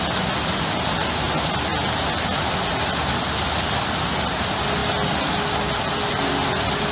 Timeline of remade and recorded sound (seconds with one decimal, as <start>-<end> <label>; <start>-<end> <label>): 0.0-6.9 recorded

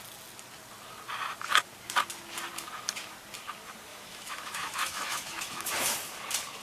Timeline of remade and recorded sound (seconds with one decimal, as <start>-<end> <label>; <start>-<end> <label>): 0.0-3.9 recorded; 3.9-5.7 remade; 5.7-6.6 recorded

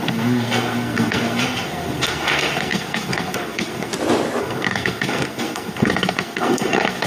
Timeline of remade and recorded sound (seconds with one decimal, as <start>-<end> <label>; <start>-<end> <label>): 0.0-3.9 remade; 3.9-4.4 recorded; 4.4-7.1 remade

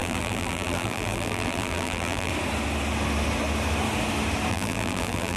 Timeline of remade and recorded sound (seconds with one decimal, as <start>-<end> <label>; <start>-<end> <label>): 0.0-2.3 remade; 2.3-4.5 recorded; 4.5-5.4 remade

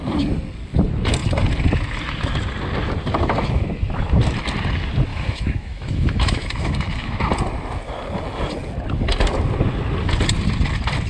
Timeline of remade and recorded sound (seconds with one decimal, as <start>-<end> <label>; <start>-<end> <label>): 0.0-5.1 recorded; 5.1-7.2 remade; 7.2-11.1 recorded

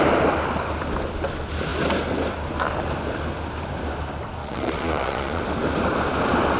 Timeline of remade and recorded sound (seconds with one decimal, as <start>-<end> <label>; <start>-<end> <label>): 0.0-4.4 recorded; 4.4-5.4 remade; 5.4-6.6 recorded

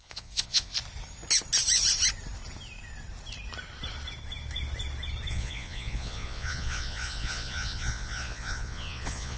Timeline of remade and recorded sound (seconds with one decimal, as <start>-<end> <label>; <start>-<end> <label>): 0.0-0.7 remade; 0.7-5.3 recorded; 5.3-9.4 remade